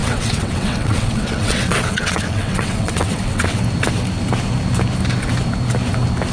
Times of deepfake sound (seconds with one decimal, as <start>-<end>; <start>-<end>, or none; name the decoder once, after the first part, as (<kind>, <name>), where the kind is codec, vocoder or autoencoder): 0.0-3.6 (vocoder, WaveNeXt)